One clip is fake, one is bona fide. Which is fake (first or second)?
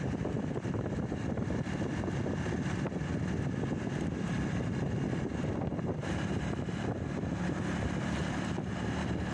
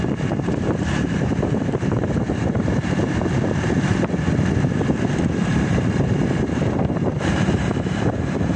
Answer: second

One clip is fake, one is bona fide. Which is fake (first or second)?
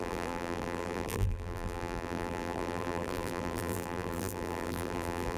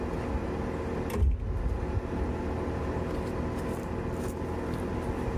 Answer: first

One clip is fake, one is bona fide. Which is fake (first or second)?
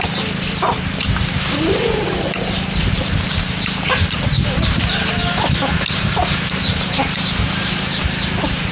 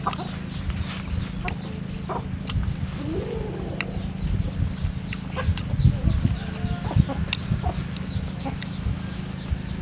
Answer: first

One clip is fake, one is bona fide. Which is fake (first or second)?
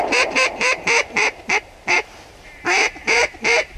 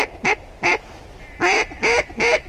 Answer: first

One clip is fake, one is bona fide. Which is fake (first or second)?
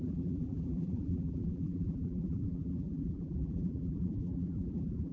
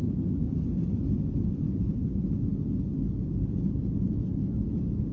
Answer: first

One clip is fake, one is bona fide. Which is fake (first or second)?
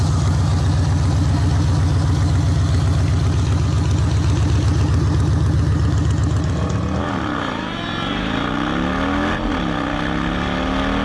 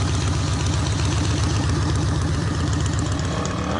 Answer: second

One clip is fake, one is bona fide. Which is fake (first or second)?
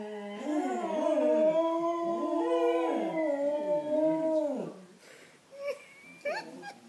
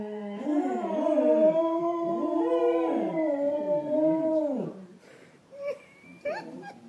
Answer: second